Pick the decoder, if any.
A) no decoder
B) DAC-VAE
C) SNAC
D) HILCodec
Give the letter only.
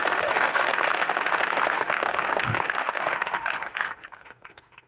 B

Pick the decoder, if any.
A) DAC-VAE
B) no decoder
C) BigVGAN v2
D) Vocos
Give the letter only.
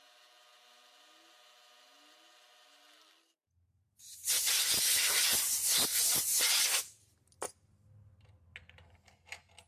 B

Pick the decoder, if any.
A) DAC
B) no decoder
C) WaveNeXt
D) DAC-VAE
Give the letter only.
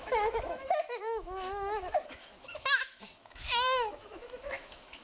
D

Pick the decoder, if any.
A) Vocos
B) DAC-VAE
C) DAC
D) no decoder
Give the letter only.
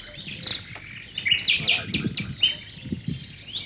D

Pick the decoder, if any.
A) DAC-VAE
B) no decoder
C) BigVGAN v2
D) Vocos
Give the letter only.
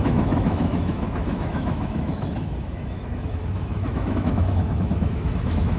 A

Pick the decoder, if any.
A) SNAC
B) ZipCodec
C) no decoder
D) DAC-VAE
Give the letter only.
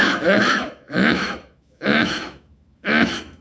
D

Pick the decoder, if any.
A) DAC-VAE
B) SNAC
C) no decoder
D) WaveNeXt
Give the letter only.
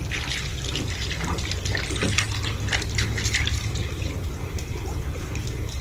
C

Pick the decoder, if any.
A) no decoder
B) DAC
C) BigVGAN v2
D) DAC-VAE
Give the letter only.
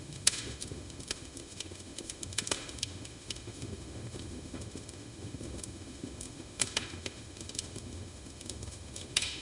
D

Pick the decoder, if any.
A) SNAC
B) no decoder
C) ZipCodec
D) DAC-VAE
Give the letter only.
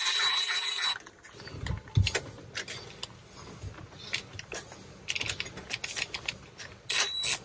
B